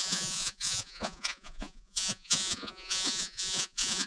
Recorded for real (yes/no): no